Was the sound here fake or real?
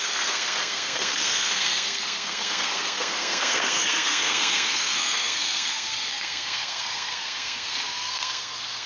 fake